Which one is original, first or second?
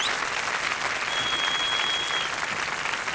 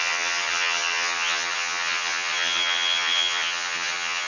first